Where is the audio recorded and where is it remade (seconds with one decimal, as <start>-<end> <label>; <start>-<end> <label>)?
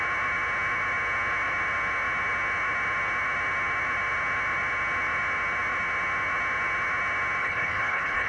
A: 0.0-7.4 recorded; 7.4-8.3 remade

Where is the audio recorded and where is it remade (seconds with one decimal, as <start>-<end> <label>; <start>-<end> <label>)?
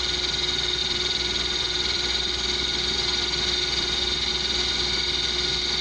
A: 0.0-0.8 recorded; 0.8-4.3 remade; 4.3-5.8 recorded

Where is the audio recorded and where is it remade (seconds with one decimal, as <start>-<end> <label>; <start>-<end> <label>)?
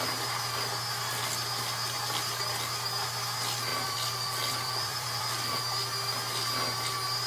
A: 0.0-3.7 recorded; 3.7-5.6 remade; 5.6-7.3 recorded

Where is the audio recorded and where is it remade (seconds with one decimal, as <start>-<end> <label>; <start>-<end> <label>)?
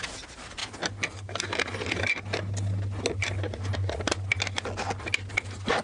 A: 0.0-5.8 recorded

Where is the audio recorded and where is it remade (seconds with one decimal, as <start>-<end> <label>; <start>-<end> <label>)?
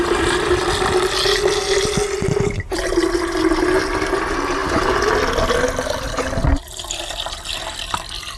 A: 0.0-4.6 recorded; 4.6-5.1 remade; 5.1-8.4 recorded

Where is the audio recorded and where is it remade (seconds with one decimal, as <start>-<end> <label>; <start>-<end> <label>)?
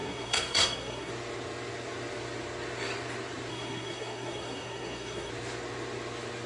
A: 0.0-1.1 remade; 1.1-3.5 recorded; 3.5-5.3 remade; 5.3-6.5 recorded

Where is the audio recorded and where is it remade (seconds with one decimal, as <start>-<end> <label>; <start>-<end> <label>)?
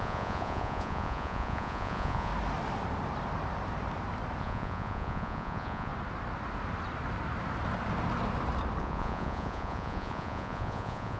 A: 0.0-2.3 remade; 2.3-4.4 recorded; 4.4-5.9 remade; 5.9-8.8 recorded; 8.8-11.2 remade